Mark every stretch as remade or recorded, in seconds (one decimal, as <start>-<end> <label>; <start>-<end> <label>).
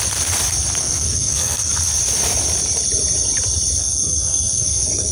0.0-0.8 recorded; 0.8-1.7 remade; 1.7-3.8 recorded; 3.8-5.1 remade